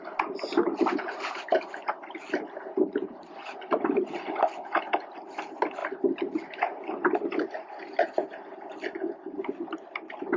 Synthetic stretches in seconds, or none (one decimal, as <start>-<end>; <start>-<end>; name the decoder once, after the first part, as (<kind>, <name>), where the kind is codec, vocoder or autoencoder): none